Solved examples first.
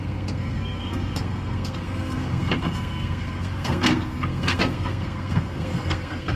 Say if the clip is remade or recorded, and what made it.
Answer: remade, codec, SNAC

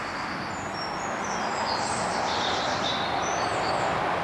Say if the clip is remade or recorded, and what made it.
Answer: recorded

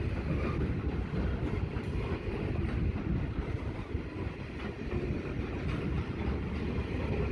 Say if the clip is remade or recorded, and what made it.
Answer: recorded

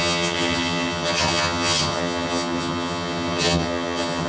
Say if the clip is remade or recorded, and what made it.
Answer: remade, vocoder, HiFi-GAN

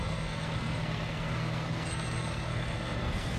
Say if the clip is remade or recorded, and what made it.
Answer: remade, codec, SNAC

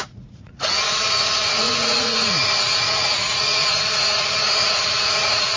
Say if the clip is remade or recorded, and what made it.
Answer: remade, vocoder, Vocos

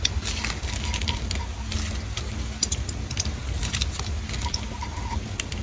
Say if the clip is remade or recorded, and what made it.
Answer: recorded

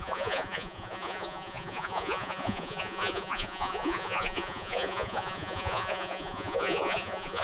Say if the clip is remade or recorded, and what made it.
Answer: remade, vocoder, Vocos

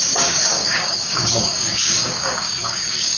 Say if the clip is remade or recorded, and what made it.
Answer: remade, codec, DAC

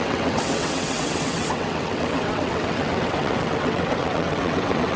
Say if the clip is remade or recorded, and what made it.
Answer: remade, vocoder, WaveNeXt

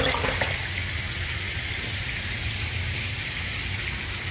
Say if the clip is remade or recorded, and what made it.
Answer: remade, vocoder, BigVGAN v2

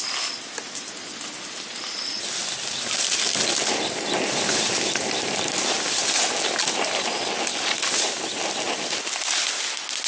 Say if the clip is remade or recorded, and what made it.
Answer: recorded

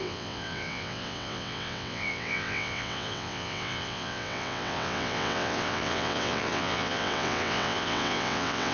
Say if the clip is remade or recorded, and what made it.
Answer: remade, vocoder, WaveNeXt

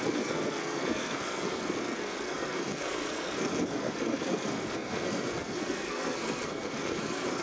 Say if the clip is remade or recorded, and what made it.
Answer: remade, codec, SNAC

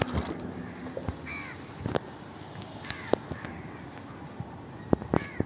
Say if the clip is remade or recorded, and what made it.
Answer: recorded